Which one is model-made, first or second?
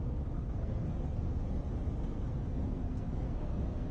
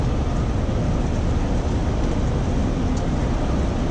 first